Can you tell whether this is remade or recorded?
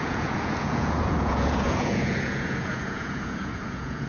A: remade